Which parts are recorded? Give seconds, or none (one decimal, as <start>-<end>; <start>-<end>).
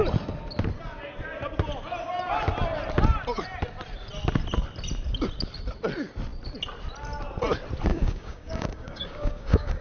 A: 0.0-7.9